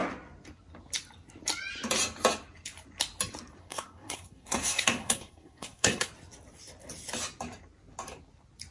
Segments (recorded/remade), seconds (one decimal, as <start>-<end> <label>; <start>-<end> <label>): 0.0-3.6 recorded; 3.6-6.1 remade; 6.1-8.7 recorded